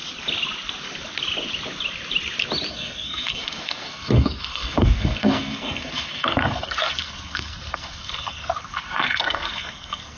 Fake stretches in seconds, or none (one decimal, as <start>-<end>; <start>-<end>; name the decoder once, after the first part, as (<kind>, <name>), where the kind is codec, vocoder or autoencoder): 2.7-10.2 (codec, SNAC)